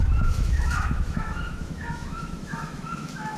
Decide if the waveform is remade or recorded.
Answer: remade